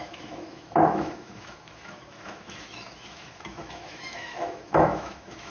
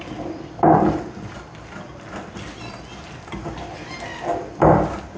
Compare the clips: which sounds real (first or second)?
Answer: second